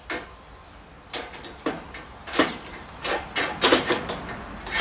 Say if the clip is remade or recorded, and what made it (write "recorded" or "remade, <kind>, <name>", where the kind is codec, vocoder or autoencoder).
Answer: recorded